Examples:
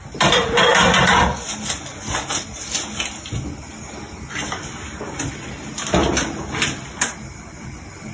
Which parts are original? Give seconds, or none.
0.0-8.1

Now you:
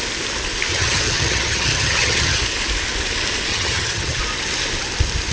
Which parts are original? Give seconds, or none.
0.0-0.7; 2.4-3.5; 4.2-5.3

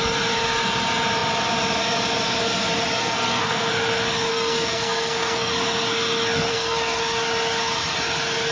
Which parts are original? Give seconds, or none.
0.0-3.0; 3.7-4.3; 5.5-6.5; 7.0-8.5

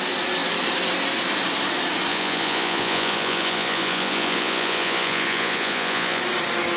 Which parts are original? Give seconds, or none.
0.0-2.1; 6.2-6.8

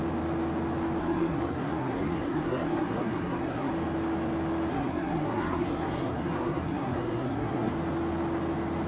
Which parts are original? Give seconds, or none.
0.0-1.0; 3.7-4.7; 7.7-8.9

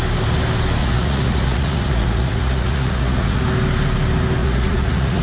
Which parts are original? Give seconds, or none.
0.0-0.8; 3.4-4.4

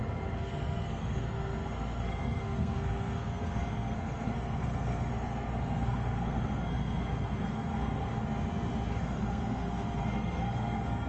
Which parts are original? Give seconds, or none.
8.1-9.0